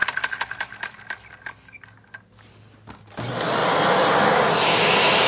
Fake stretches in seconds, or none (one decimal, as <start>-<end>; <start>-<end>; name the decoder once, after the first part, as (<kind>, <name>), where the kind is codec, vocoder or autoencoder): none